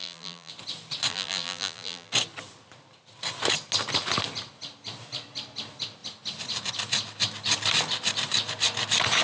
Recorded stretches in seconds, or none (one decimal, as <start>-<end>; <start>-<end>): 0.5-1.1; 2.1-9.2